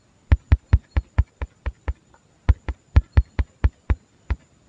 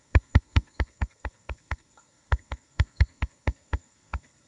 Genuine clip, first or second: first